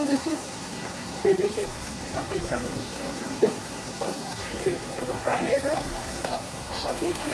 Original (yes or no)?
no